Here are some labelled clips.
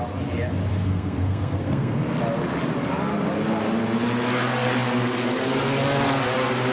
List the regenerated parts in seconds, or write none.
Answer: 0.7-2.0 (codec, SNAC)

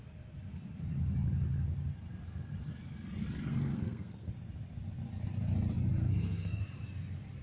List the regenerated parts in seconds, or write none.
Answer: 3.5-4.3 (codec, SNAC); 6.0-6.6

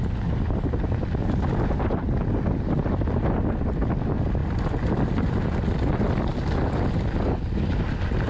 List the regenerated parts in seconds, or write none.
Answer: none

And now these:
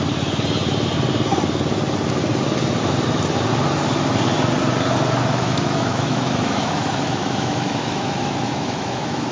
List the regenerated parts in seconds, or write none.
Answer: 5.3-9.3 (autoencoder, DAC-VAE)

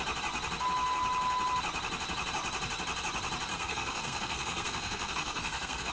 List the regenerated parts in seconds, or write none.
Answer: 3.5-5.9 (codec, SNAC)